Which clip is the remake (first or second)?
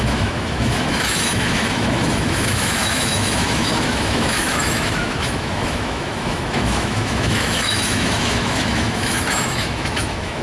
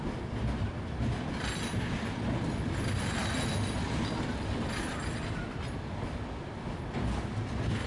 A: first